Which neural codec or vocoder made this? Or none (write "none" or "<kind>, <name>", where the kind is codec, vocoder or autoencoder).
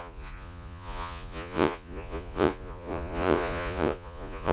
vocoder, Vocos